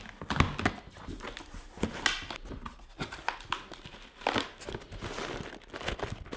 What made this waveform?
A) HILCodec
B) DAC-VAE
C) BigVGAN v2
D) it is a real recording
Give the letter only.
D